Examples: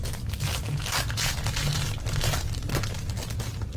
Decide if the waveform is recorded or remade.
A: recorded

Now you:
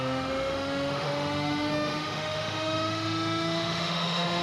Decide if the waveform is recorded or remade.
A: remade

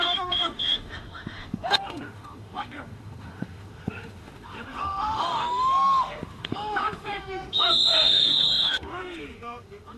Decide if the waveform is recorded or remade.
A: remade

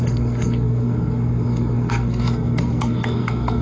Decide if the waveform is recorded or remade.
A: remade